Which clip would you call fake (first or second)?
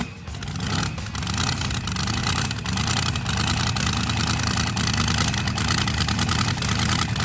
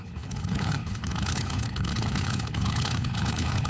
second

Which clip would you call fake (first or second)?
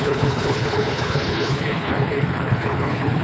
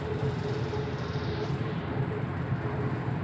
first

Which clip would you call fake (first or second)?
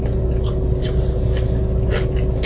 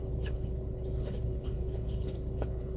second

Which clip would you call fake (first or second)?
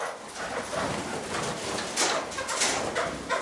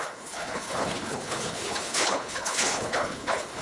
second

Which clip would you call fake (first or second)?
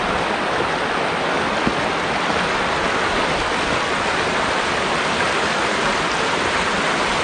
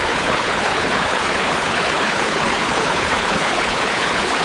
second